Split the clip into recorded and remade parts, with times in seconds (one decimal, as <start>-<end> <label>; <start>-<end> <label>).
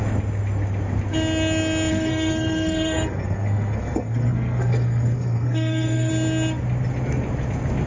0.0-1.9 recorded; 1.9-6.1 remade; 6.1-7.9 recorded